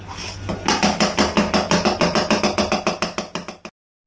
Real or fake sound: real